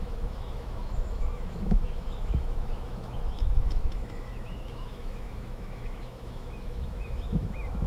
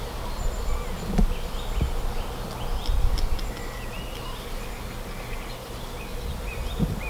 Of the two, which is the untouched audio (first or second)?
second